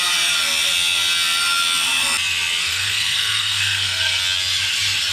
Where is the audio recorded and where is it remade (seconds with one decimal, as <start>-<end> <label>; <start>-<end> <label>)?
0.0-2.6 recorded; 2.6-4.2 remade; 4.2-5.1 recorded